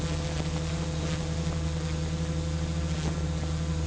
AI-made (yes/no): no